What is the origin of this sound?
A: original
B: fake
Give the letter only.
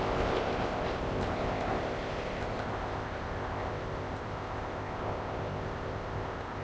B